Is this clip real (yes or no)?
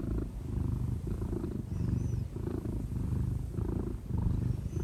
yes